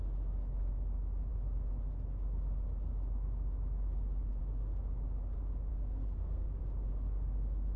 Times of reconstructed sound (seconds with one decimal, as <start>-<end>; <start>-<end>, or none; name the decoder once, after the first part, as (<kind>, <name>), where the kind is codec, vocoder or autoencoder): 5.7-6.6 (codec, SNAC)